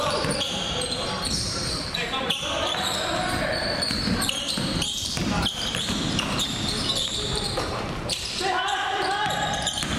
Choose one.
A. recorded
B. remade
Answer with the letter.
B